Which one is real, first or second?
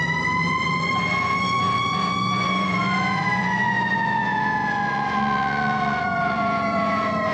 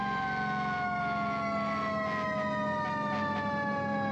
second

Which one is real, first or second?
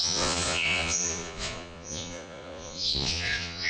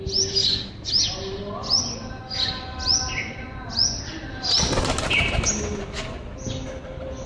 second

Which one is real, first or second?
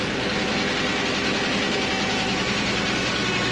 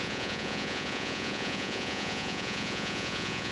first